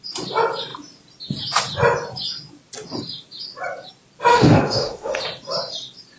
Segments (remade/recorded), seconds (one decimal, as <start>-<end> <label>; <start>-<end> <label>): 0.0-4.3 recorded; 4.3-5.2 remade; 5.2-6.2 recorded